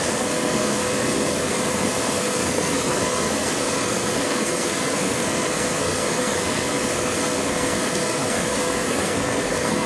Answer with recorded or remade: remade